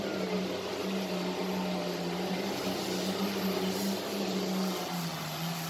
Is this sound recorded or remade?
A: recorded